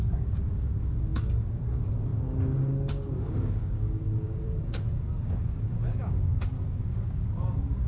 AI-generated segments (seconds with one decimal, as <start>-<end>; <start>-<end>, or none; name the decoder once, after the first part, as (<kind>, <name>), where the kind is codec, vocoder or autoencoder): 0.0-7.9 (codec, DAC)